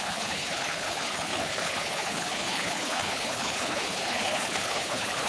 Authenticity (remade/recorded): remade